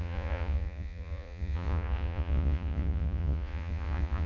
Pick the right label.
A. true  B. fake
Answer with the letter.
B